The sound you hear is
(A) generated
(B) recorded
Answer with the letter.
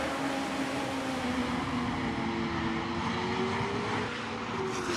B